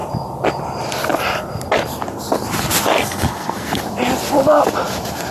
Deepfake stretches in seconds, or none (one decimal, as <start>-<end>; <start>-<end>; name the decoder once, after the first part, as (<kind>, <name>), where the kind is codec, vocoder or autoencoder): 2.9-3.8 (codec, SNAC)